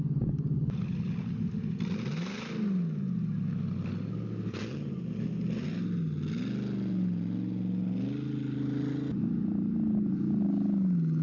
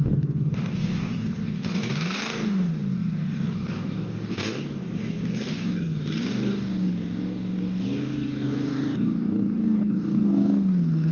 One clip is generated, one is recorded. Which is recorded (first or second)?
first